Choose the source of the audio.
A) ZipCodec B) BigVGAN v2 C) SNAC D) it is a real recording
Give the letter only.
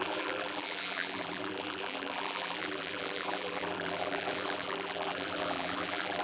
B